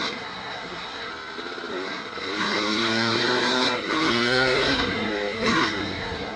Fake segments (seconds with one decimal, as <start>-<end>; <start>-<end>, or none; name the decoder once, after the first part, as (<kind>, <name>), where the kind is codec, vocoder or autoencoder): 0.0-1.1 (codec, SNAC); 1.7-6.4